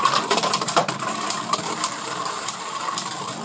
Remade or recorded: remade